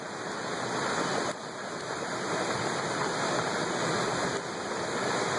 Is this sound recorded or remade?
recorded